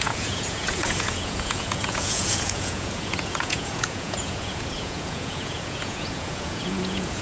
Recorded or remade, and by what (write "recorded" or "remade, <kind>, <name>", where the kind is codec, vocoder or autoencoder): remade, vocoder, Vocos